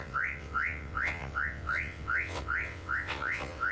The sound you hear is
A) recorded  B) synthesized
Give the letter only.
B